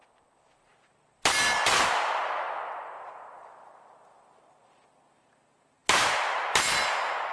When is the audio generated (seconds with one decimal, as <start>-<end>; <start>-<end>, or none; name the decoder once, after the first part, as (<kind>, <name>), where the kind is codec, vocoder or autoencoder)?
none